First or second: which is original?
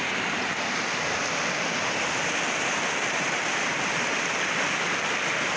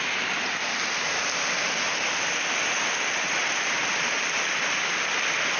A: second